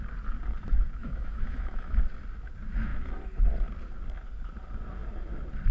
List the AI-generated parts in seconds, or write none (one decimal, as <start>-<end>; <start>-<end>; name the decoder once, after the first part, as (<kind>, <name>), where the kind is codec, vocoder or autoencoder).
1.0-2.0 (autoencoder, DAC-VAE)